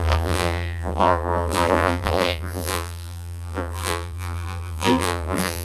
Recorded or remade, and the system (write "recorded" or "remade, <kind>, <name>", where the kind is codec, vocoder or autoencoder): remade, vocoder, BigVGAN v2